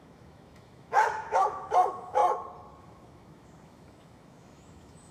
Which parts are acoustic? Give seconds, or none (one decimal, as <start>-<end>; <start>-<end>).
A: 2.2-2.8